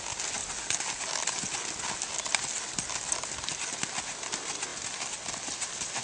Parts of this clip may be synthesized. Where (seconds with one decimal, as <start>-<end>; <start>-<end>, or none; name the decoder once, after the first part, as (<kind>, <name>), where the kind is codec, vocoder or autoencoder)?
none